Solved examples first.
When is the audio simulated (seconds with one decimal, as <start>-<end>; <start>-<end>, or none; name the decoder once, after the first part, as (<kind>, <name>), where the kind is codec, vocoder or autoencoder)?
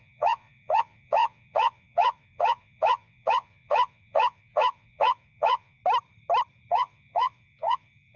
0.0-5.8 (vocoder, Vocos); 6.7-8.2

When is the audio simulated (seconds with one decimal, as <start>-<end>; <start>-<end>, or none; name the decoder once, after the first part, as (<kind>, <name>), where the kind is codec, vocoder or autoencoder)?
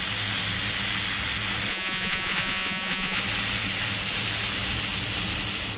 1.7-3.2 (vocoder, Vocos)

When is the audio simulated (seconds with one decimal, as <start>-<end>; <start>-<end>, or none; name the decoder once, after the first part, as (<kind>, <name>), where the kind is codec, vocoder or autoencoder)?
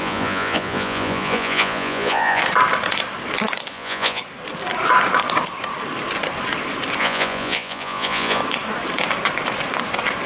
0.0-2.4 (vocoder, Vocos); 3.7-4.2; 7.0-8.4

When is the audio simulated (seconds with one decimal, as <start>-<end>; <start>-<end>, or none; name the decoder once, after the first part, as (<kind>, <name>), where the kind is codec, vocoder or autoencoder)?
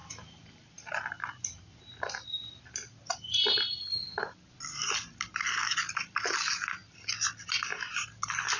none